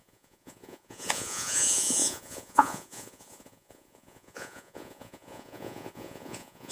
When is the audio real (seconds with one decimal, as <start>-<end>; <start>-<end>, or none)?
none